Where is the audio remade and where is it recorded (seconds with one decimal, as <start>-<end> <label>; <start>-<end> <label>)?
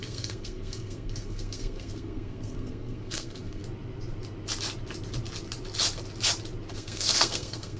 0.0-3.6 remade; 3.6-6.7 recorded; 6.7-7.8 remade